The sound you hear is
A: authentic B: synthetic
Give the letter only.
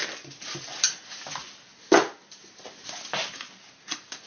A